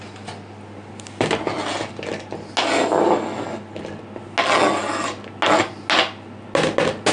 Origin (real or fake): real